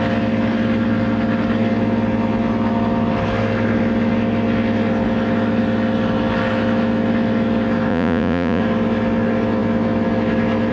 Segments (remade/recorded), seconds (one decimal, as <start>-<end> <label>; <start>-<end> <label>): 0.0-7.9 recorded; 7.9-8.6 remade; 8.6-10.7 recorded